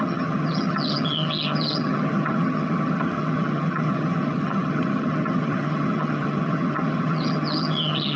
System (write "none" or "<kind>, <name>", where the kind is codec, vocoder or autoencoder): vocoder, HiFi-GAN